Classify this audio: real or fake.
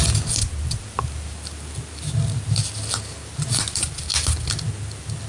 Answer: real